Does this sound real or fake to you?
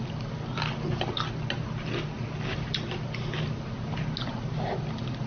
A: real